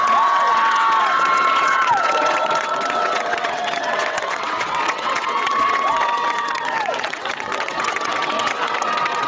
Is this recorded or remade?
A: remade